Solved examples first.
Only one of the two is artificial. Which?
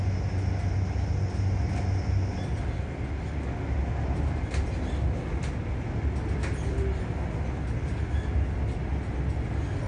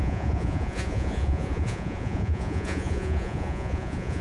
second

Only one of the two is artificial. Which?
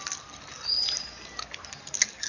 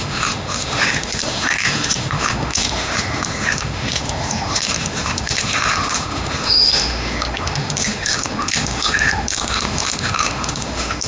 second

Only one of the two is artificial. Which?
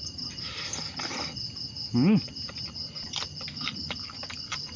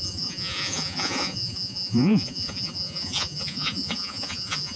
second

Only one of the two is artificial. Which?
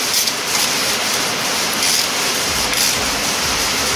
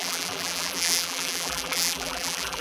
second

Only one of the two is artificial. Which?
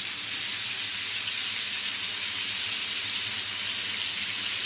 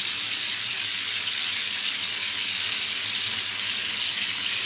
second